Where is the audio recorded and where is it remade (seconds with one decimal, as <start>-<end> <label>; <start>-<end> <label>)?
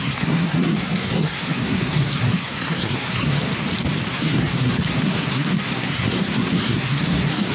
0.0-3.5 remade; 3.5-4.1 recorded; 4.1-7.5 remade